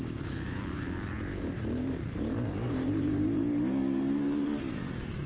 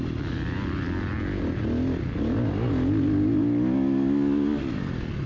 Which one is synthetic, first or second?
first